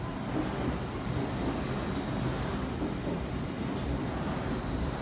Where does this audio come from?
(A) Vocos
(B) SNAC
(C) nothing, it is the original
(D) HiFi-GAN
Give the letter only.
C